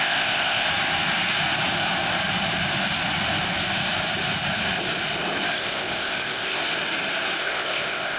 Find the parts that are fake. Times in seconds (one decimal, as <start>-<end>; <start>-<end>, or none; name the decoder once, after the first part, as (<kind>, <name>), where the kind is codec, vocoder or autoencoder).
0.0-0.7 (codec, ZipCodec); 5.5-6.6; 7.4-8.2